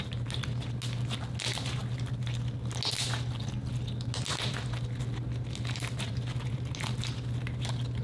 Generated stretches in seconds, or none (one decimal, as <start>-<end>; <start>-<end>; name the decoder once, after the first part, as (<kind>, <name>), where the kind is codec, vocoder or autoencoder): none